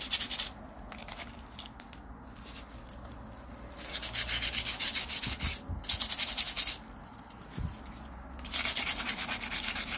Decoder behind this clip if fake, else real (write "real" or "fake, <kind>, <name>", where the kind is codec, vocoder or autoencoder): real